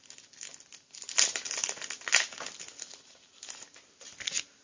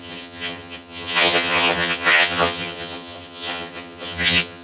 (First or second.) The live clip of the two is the first